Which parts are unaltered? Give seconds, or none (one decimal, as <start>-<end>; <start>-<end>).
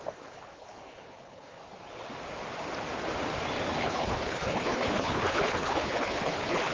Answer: 1.6-3.8